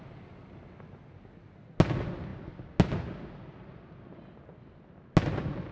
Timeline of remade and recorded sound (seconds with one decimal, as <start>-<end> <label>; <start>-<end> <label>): 0.0-5.7 recorded